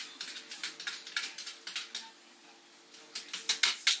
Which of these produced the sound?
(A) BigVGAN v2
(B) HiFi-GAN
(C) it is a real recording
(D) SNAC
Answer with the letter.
C